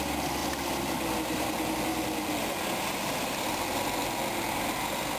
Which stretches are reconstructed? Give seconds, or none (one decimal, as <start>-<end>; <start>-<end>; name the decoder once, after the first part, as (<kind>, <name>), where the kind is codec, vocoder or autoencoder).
none